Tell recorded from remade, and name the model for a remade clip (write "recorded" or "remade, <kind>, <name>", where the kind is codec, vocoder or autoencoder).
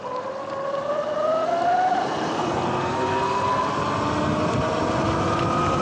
recorded